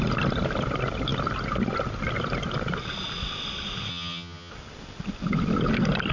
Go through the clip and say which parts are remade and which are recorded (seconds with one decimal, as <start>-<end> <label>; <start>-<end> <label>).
0.0-3.9 recorded; 3.9-4.5 remade; 4.5-6.1 recorded

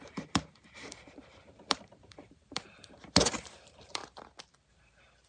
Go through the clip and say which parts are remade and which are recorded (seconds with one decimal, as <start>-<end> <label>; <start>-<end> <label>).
0.0-4.0 remade; 4.0-4.7 recorded; 4.7-5.3 remade